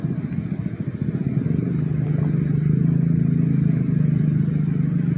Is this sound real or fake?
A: real